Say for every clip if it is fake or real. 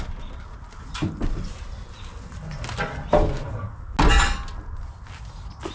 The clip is real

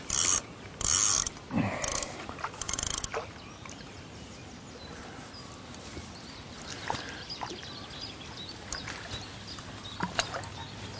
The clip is real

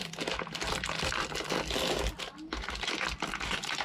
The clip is real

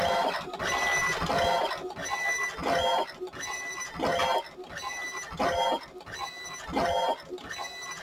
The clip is real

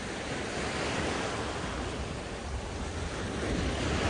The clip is real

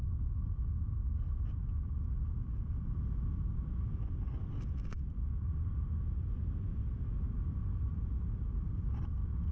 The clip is real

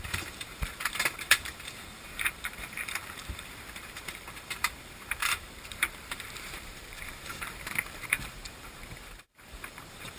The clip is fake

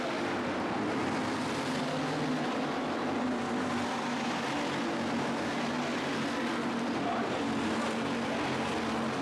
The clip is real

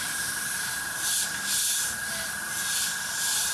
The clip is real